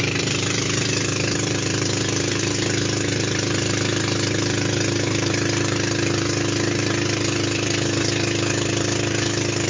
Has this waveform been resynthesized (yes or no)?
yes